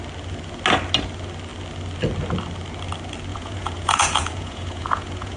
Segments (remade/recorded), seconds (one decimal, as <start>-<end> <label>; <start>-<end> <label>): 0.0-3.3 recorded; 3.3-5.4 remade